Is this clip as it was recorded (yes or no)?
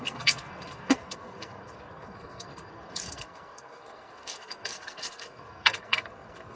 no